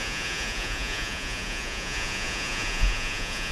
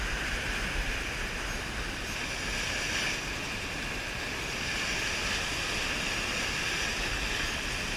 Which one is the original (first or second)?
second